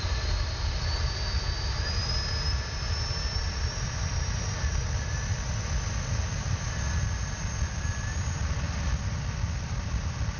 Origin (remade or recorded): recorded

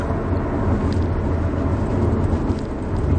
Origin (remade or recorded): recorded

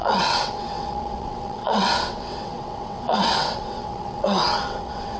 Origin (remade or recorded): remade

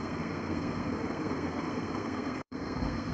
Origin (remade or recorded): remade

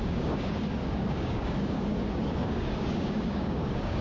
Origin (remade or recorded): remade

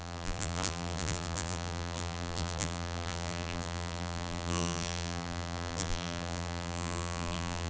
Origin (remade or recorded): remade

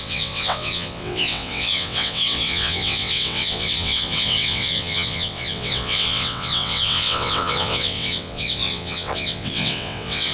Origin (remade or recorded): remade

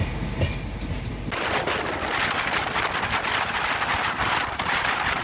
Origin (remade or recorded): recorded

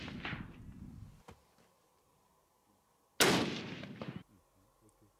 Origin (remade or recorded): recorded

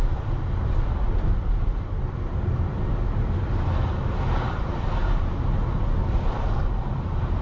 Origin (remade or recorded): remade